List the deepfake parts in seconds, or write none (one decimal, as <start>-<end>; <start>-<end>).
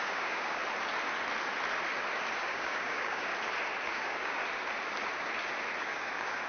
0.0-0.6; 2.4-3.3; 3.9-4.4; 5.8-6.5